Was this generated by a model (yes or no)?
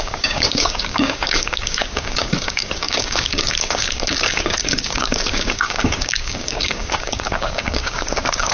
yes